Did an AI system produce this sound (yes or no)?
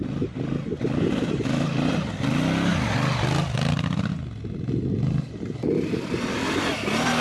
no